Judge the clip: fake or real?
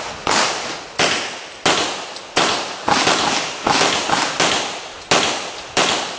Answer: real